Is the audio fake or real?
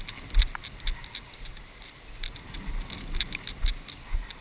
real